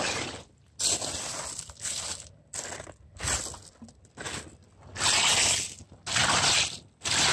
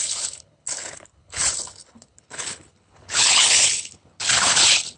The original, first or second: first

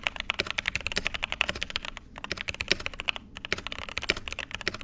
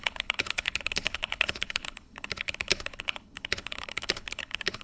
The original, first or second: first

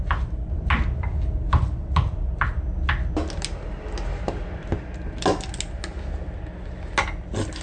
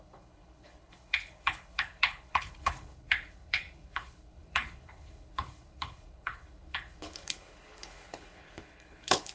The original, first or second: first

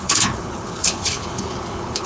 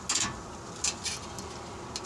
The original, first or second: second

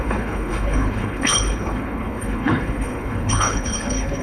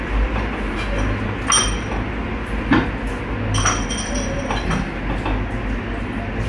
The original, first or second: second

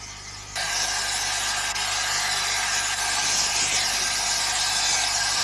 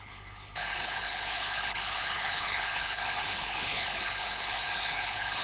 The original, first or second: first